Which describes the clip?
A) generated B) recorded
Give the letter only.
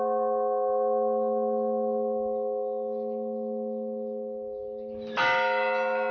B